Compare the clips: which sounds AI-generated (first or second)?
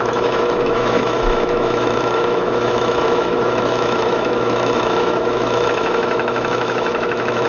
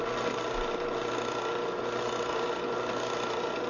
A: first